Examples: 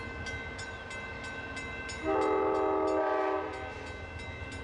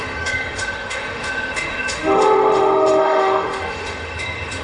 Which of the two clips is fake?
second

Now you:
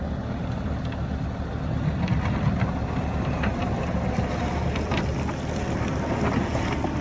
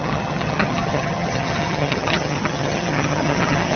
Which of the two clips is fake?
second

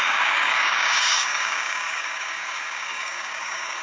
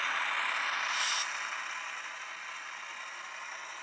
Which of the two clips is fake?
first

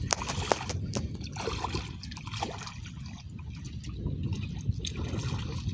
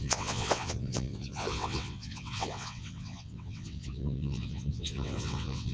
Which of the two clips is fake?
second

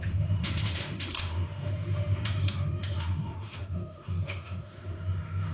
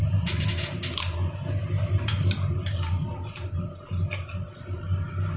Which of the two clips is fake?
first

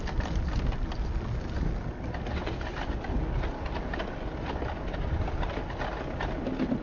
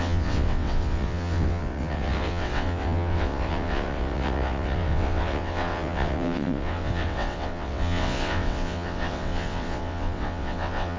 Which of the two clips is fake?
second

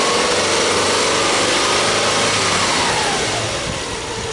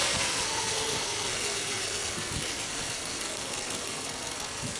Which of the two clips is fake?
second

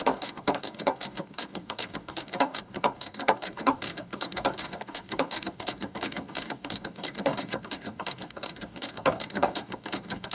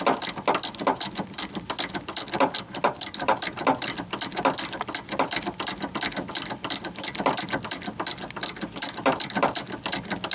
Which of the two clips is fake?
first